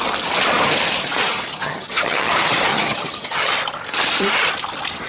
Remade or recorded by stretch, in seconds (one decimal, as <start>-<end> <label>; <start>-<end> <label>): 0.0-1.5 recorded; 1.5-2.3 remade; 2.3-2.7 recorded; 2.7-3.5 remade; 3.5-5.1 recorded